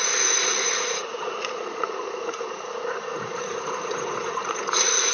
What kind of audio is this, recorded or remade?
remade